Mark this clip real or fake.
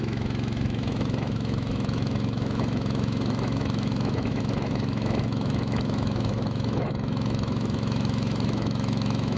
fake